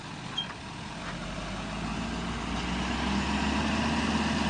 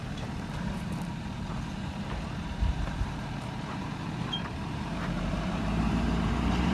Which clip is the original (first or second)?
first